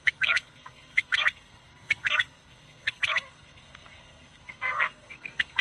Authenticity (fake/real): fake